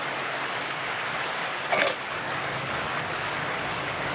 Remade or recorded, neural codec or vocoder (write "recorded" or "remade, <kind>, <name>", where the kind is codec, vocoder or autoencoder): remade, codec, DAC